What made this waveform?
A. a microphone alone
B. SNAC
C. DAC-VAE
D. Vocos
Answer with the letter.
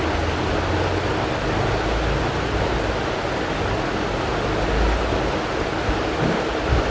A